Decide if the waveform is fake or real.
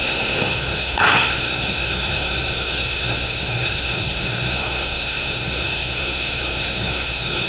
fake